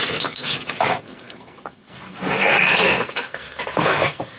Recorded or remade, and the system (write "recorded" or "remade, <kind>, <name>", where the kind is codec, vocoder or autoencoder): remade, codec, SNAC